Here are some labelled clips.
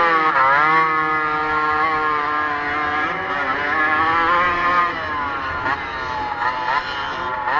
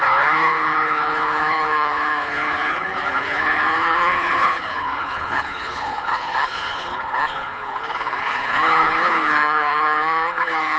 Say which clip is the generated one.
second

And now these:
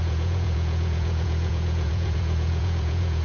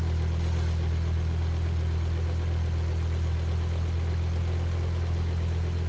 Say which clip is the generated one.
first